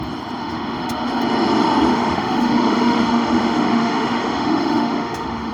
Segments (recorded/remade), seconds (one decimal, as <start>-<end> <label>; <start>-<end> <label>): 0.0-0.4 recorded; 0.4-1.2 remade; 1.2-1.9 recorded; 1.9-5.5 remade